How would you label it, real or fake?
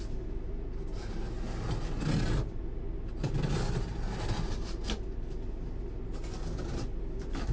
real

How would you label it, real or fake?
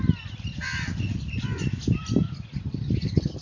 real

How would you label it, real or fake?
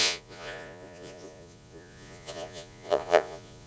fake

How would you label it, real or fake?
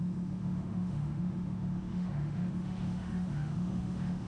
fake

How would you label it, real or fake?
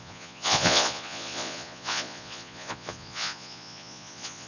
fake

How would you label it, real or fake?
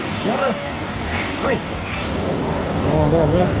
fake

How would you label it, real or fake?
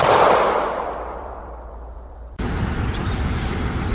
fake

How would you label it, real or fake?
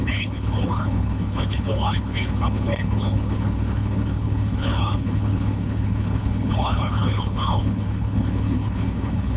fake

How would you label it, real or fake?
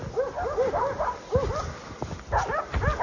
real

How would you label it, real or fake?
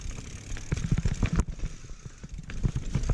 real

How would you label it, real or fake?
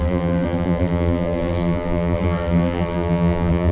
fake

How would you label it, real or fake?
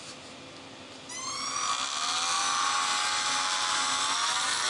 real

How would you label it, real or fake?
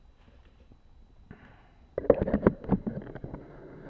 real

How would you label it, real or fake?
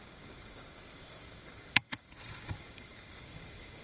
fake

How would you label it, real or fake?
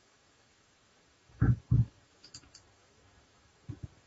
fake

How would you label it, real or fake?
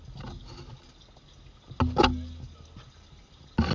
real